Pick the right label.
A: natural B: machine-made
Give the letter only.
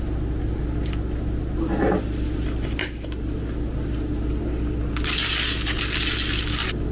A